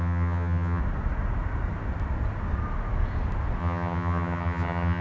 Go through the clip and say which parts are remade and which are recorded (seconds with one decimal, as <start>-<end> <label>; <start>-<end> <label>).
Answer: 0.0-0.8 remade; 0.8-3.6 recorded; 3.6-5.0 remade